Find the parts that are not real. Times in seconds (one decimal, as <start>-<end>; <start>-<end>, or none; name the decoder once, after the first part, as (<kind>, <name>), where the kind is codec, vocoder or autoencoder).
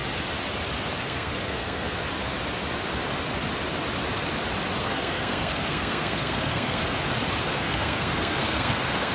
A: 1.0-2.0 (codec, SNAC); 4.8-6.8; 7.4-9.1